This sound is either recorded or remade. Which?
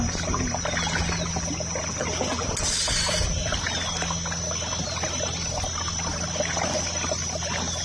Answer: recorded